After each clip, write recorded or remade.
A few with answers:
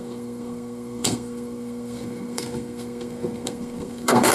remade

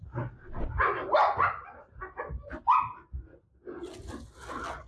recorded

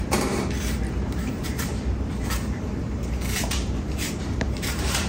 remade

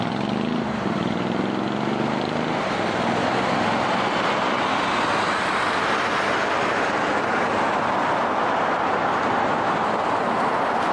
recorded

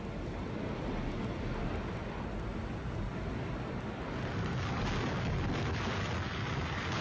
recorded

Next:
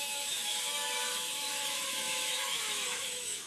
remade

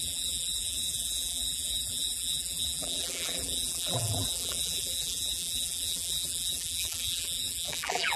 remade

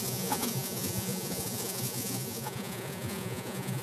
remade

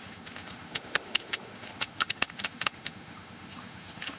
remade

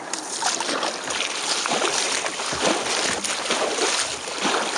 recorded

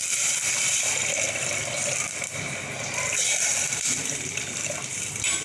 remade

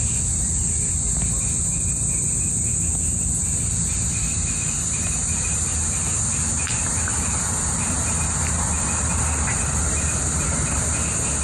recorded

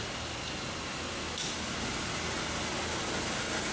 recorded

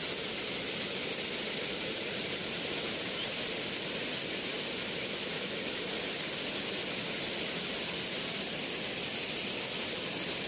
recorded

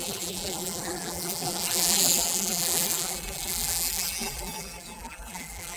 remade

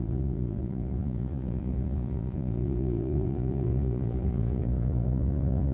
remade